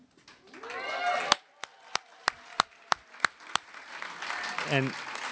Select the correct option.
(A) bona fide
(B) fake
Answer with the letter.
A